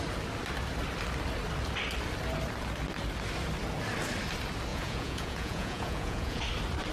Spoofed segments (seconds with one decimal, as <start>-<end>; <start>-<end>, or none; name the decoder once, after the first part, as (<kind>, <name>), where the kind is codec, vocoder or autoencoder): 4.7-6.4 (vocoder, Vocos)